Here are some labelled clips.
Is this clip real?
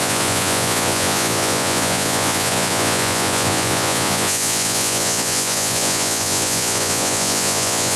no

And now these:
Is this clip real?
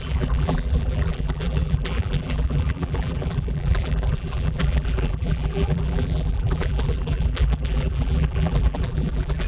no